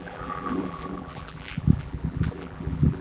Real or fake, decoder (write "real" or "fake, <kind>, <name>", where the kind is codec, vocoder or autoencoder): fake, vocoder, BigVGAN v2